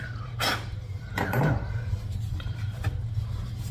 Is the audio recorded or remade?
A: remade